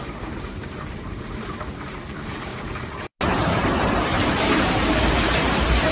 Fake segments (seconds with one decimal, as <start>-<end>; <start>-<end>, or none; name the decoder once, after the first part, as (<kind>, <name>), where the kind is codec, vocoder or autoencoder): 0.0-2.5 (vocoder, BigVGAN v2); 4.3-5.9